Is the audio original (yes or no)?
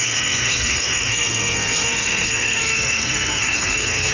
no